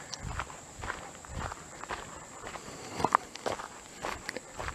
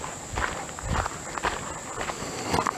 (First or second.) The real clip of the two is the second